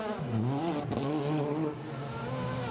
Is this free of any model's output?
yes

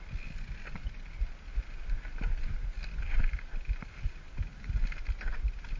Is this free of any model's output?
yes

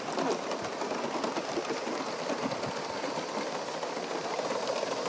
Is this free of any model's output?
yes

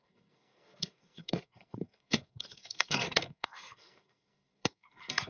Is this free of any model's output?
no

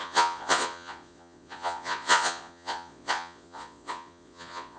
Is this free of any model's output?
no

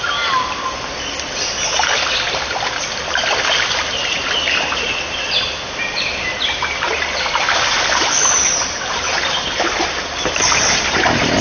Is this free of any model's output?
yes